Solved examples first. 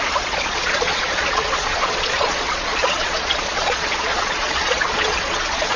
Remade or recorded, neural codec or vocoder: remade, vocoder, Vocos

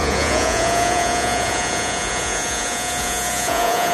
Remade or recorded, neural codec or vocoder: remade, vocoder, Vocos